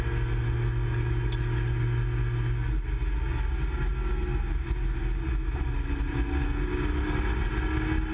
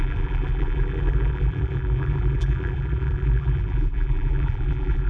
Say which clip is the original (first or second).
first